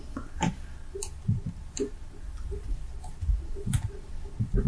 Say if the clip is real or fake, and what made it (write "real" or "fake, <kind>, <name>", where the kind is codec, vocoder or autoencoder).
real